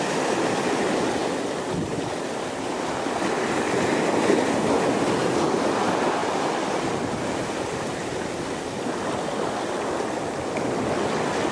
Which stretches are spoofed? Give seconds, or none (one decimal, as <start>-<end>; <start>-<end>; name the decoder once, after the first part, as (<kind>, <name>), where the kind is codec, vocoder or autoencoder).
1.2-1.7 (vocoder, BigVGAN v2)